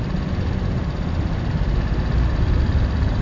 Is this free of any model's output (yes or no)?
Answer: yes